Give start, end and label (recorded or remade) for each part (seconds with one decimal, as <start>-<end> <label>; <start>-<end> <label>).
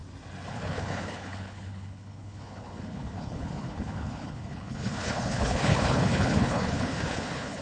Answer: 0.0-0.5 recorded; 0.5-7.6 remade